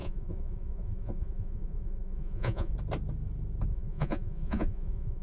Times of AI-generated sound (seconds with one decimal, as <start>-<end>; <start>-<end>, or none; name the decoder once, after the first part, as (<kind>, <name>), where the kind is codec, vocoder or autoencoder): 0.0-2.7 (vocoder, Vocos); 3.7-5.2